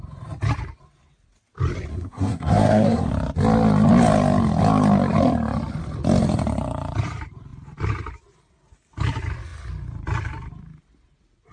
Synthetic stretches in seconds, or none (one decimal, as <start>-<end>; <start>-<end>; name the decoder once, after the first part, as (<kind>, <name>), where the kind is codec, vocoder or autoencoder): 1.9-3.1 (codec, SNAC)